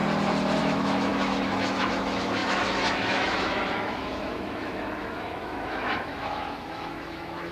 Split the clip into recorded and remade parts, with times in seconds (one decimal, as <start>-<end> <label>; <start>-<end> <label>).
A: 0.0-0.6 recorded; 0.6-7.5 remade